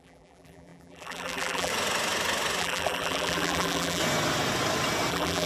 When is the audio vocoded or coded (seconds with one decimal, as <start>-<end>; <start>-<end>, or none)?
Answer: 0.0-1.7; 2.6-4.0; 5.1-5.5